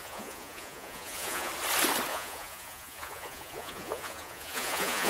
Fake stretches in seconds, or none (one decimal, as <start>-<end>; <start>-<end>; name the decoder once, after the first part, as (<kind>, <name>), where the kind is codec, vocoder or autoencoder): 0.0-1.5 (vocoder, Vocos); 2.1-5.1